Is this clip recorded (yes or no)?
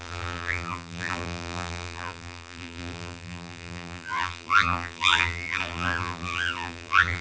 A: no